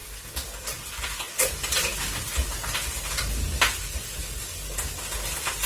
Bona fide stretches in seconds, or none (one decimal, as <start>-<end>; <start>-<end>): 0.0-5.7